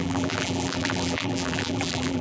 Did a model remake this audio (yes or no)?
yes